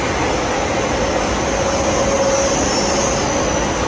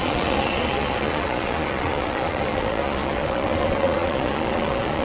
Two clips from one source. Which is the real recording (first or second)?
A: first